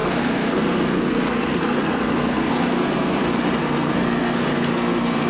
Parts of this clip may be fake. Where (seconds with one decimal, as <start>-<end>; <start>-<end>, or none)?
0.0-3.2; 3.6-5.3